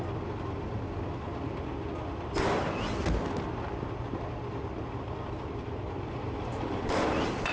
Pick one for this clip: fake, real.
real